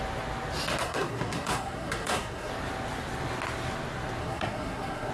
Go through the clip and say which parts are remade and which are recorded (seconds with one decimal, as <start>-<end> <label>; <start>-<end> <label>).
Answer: 0.0-0.8 recorded; 0.8-2.5 remade; 2.5-4.2 recorded; 4.2-5.1 remade